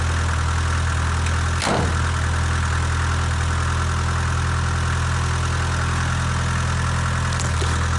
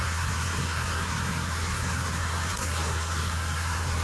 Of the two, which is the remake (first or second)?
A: second